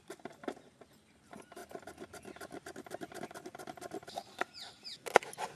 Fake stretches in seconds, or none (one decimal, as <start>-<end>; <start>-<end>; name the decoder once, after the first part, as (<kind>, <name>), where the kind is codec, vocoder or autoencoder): none